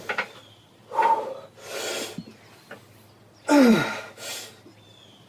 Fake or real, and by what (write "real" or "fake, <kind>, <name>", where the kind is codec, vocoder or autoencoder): real